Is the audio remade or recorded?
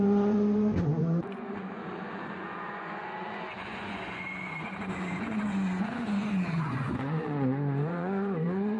remade